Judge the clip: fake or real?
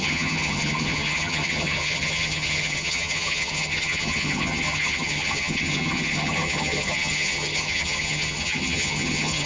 fake